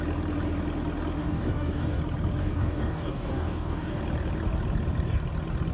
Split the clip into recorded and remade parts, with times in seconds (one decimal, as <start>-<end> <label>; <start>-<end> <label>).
0.0-1.2 recorded; 1.2-2.0 remade; 2.0-2.4 recorded; 2.4-4.0 remade; 4.0-5.7 recorded